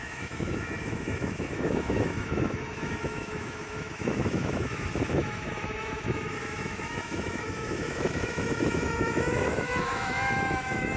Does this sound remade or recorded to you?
remade